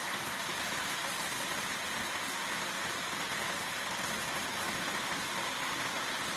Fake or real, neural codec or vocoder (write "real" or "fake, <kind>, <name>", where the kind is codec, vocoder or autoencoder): real